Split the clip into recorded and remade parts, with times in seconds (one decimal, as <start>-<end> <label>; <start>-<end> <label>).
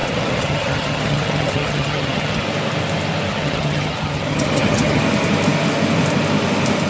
0.0-2.4 remade; 2.4-3.3 recorded; 3.3-5.0 remade; 5.0-6.9 recorded